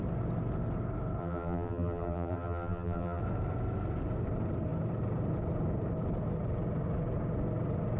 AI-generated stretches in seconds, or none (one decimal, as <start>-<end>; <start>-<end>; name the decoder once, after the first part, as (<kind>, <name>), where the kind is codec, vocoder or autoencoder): 1.2-3.2 (vocoder, BigVGAN v2)